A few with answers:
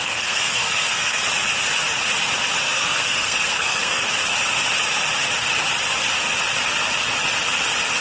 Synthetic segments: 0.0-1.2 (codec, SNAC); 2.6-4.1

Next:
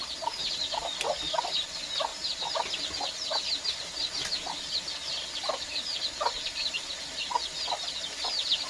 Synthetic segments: none

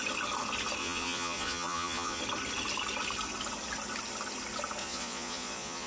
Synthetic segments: 0.8-2.2 (vocoder, Vocos); 4.8-5.9

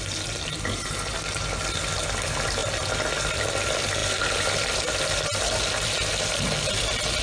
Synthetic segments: 2.6-3.5 (vocoder, BigVGAN v2); 4.0-5.9

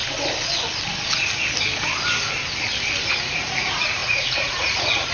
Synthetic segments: 3.1-5.1 (vocoder, Vocos)

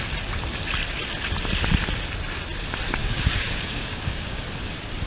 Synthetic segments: 3.0-4.5 (codec, DAC)

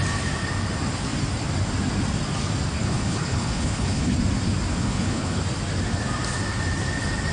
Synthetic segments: 2.8-4.1 (codec, HILCodec); 4.7-5.4